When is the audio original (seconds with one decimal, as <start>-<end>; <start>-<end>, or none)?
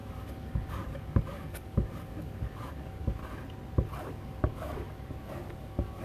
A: 3.2-4.0